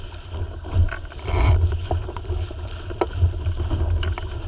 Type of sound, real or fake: fake